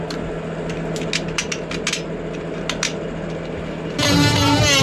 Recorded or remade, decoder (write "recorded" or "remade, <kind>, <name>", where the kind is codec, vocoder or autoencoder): recorded